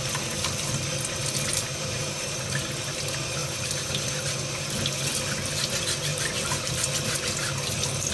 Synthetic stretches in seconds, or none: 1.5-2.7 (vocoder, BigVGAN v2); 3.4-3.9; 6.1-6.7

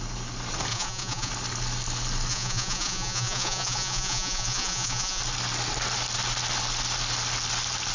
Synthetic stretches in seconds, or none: 0.7-1.3 (vocoder, Vocos); 2.3-5.2

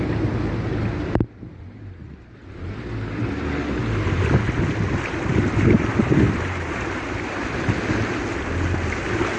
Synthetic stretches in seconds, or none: none

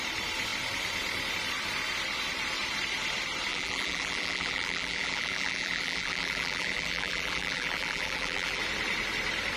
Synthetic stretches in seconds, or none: 3.5-8.6 (vocoder, BigVGAN v2)

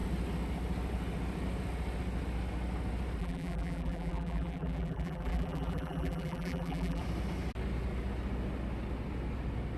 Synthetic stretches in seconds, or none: 3.2-7.0 (vocoder, BigVGAN v2)

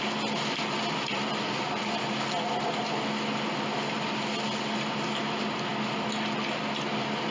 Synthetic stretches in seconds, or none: none

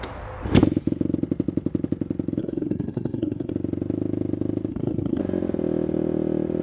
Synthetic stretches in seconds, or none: 2.4-3.5 (codec, SNAC); 4.7-5.2

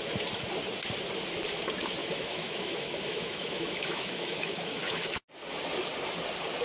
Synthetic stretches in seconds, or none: 2.0-5.2 (autoencoder, DAC-VAE)